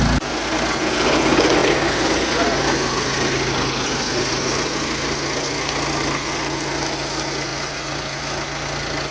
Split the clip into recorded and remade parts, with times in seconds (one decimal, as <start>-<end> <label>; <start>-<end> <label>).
0.0-9.1 recorded